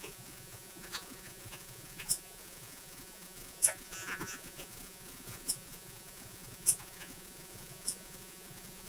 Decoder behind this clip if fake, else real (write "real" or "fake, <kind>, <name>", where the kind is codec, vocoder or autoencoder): fake, vocoder, Vocos